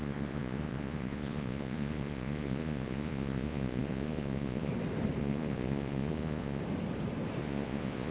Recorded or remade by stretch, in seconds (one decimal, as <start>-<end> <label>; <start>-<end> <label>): 0.0-4.7 remade; 4.7-5.2 recorded; 5.2-6.6 remade; 6.6-7.4 recorded; 7.4-8.1 remade